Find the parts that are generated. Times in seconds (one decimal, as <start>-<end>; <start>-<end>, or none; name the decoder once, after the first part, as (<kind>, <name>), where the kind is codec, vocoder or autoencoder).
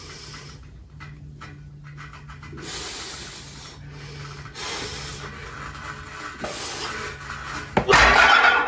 none